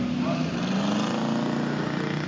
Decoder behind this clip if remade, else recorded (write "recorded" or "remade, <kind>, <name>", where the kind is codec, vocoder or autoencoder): recorded